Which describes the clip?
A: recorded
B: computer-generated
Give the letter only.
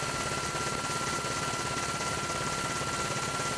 A